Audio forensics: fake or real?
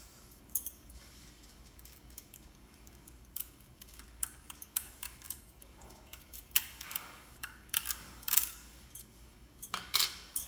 fake